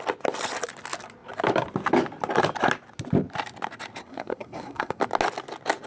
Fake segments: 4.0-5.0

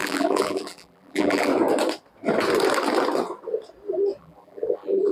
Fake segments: 0.0-1.5; 4.2-5.1

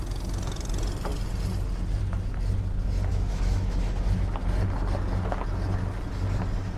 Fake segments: 3.1-4.4

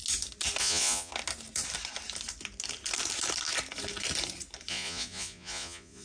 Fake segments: 0.6-1.1; 4.7-6.0